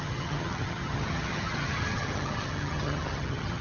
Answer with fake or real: fake